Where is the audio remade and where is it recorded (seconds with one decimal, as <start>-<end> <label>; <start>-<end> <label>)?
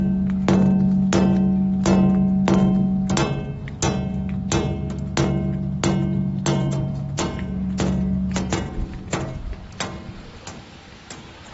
0.0-6.6 recorded; 6.6-9.4 remade; 9.4-11.5 recorded